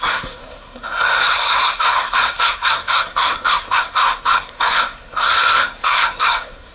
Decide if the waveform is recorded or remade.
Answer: remade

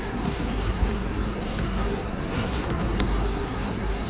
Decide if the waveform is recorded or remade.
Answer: remade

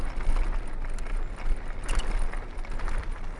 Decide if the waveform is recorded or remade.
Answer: recorded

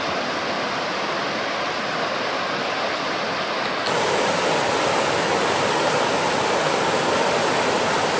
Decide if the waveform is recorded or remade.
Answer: recorded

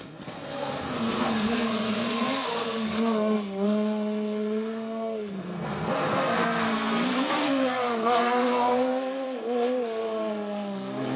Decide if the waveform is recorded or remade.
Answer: remade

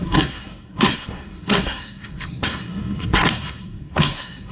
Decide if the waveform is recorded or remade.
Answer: remade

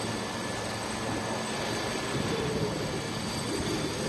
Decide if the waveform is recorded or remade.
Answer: recorded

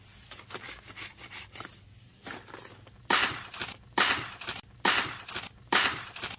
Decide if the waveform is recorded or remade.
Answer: recorded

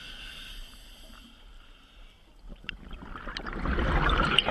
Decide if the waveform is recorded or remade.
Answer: recorded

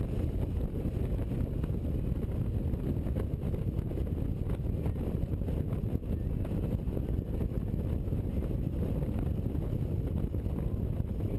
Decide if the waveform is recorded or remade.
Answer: recorded